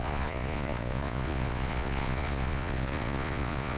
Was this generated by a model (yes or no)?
yes